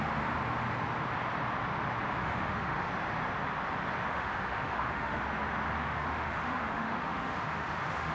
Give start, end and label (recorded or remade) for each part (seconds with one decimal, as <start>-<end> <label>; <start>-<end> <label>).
0.0-2.2 recorded; 2.2-2.9 remade; 2.9-4.1 recorded; 4.1-5.2 remade; 5.2-5.8 recorded; 5.8-8.1 remade